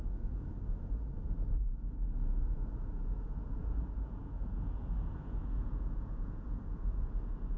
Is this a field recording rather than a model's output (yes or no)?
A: no